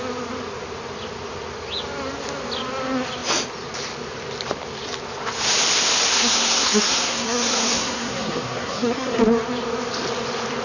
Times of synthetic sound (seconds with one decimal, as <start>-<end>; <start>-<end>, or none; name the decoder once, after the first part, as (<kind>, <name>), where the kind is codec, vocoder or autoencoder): 6.1-9.2 (codec, SNAC)

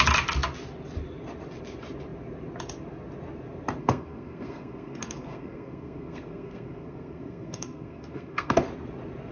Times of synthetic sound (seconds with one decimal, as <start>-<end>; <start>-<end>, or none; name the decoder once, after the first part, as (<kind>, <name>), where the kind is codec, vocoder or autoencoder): 3.8-8.6 (codec, SNAC)

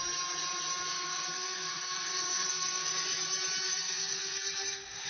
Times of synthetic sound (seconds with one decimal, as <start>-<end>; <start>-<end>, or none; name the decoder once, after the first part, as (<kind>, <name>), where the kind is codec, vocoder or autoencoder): 0.9-2.9 (codec, SNAC); 3.7-5.1

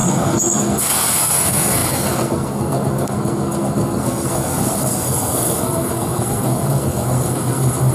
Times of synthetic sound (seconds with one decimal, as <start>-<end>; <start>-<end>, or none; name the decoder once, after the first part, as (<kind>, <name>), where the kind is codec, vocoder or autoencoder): 0.0-7.9 (codec, SNAC)

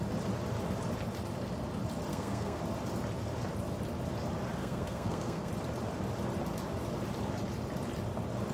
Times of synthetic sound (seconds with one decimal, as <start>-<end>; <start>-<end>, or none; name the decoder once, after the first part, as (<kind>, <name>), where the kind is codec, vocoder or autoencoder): 2.1-2.6 (codec, SNAC); 4.6-5.5

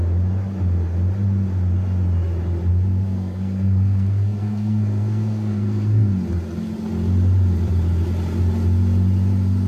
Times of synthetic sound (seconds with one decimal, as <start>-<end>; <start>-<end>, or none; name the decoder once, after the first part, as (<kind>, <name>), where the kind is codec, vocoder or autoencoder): 2.7-6.1 (codec, SNAC)